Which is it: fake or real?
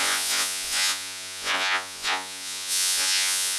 fake